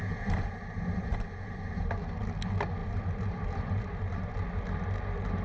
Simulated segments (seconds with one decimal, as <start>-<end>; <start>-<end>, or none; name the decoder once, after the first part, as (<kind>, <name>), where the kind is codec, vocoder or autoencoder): 0.0-1.9 (vocoder, BigVGAN v2); 2.8-4.2